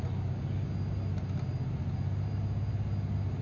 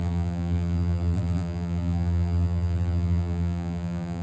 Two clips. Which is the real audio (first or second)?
first